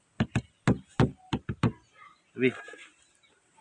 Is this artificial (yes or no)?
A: no